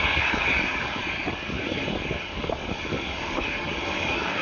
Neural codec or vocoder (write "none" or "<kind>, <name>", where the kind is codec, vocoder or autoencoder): codec, DAC